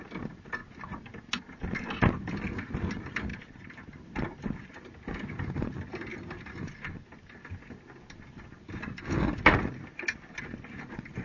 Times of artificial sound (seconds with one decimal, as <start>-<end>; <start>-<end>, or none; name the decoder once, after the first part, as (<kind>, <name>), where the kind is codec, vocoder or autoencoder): 3.3-3.9 (vocoder, BigVGAN v2); 6.1-7.1